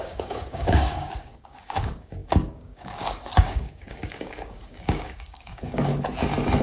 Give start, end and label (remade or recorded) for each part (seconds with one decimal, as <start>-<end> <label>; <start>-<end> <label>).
0.0-5.9 remade; 5.9-6.6 recorded